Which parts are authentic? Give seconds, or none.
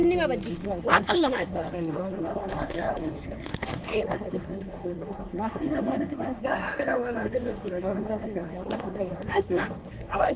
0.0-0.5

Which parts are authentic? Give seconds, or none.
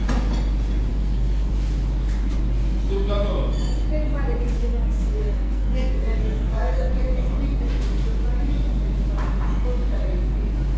0.0-0.9; 1.5-4.6; 6.9-10.8